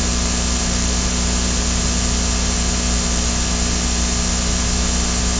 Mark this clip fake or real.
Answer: real